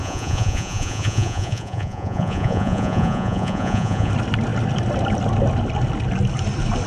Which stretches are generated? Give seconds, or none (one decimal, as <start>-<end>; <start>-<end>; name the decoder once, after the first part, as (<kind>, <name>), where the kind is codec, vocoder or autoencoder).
0.0-4.1 (vocoder, Vocos)